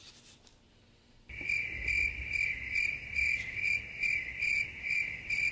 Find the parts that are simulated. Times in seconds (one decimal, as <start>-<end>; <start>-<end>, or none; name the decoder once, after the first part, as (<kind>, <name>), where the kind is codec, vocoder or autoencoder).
none